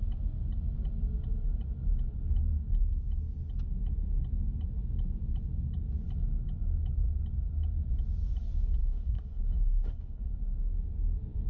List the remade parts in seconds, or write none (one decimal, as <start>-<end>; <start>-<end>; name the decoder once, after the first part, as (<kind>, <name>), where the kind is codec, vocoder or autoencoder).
8.8-10.3 (codec, HILCodec)